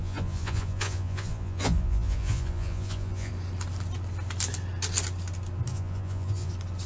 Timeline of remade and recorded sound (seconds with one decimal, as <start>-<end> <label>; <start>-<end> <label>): 0.0-3.3 remade; 3.3-5.7 recorded; 5.7-6.5 remade; 6.5-6.9 recorded